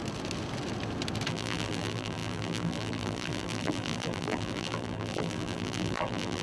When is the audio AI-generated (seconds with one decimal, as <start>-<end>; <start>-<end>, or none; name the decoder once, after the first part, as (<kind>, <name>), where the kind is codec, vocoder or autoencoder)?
1.3-6.4 (vocoder, BigVGAN v2)